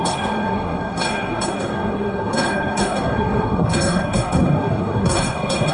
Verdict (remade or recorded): remade